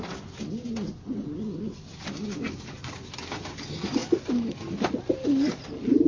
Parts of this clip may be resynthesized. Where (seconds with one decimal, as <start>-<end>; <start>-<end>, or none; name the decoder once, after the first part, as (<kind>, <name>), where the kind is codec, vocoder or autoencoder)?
none